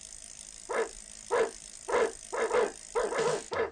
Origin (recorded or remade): recorded